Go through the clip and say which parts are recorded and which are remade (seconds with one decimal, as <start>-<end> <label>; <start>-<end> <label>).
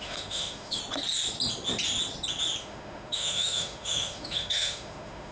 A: 0.0-0.8 remade; 0.8-2.6 recorded; 2.6-5.3 remade